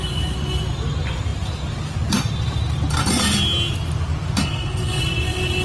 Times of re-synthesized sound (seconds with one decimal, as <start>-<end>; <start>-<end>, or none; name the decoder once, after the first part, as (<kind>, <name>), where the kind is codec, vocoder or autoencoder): 4.4-5.0 (codec, SNAC)